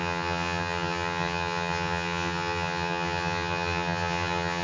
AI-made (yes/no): yes